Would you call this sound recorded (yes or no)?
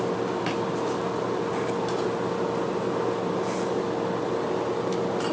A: yes